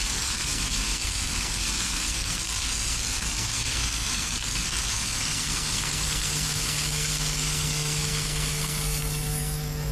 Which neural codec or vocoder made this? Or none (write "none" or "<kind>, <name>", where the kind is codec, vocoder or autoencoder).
codec, SNAC